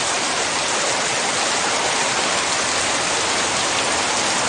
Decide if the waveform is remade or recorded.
recorded